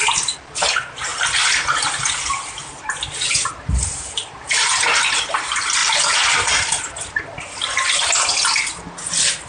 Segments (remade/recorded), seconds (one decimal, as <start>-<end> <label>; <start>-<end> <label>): 0.0-5.8 recorded; 5.8-6.8 remade; 6.8-9.5 recorded